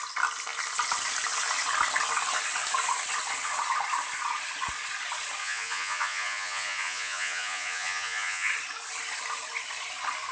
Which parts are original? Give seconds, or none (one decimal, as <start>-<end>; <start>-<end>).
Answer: 0.0-5.4; 8.5-10.3